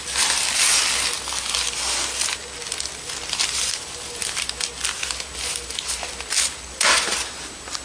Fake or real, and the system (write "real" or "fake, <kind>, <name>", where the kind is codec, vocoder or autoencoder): real